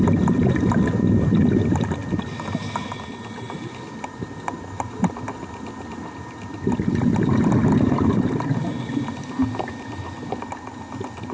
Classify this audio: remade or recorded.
recorded